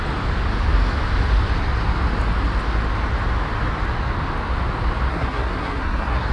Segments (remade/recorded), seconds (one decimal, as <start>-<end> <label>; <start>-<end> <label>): 0.0-5.1 recorded; 5.1-6.3 remade